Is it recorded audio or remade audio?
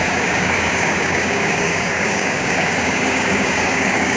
remade